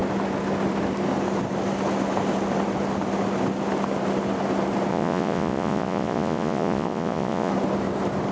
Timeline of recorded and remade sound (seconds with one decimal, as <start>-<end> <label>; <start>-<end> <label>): 0.0-4.9 recorded; 4.9-7.5 remade; 7.5-8.3 recorded